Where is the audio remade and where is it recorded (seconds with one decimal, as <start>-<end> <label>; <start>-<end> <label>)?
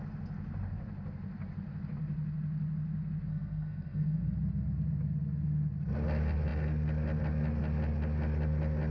0.0-3.3 recorded; 3.3-4.3 remade; 4.3-8.9 recorded